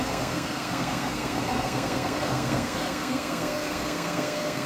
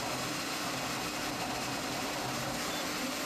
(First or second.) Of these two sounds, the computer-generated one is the first